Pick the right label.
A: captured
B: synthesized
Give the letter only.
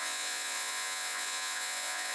B